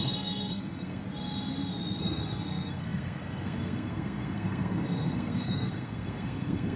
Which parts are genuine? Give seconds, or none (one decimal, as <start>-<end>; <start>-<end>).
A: 1.0-2.0